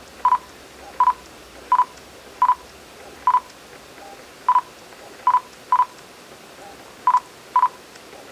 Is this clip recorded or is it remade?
recorded